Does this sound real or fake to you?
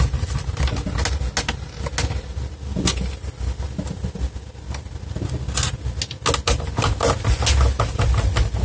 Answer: real